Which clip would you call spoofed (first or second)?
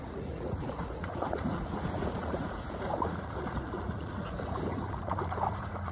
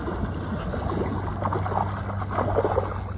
first